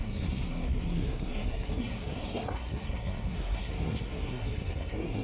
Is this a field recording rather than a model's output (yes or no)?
no